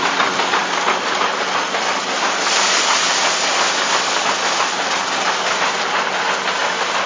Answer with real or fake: real